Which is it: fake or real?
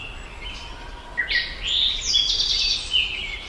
real